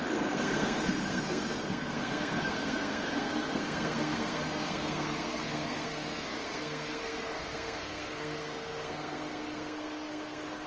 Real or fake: fake